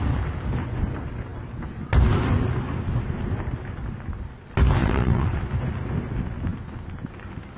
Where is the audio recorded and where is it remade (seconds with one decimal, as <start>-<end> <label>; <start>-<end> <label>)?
0.0-4.8 recorded; 4.8-5.4 remade; 5.4-7.6 recorded